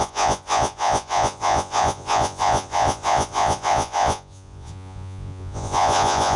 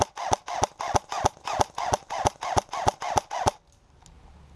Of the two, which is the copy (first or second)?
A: first